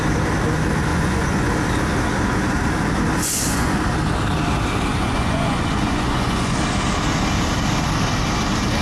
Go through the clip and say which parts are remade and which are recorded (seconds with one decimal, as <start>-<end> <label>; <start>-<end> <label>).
0.0-0.9 recorded; 0.9-1.5 remade; 1.5-3.2 recorded; 3.2-3.8 remade; 3.8-4.9 recorded; 4.9-6.6 remade; 6.6-8.8 recorded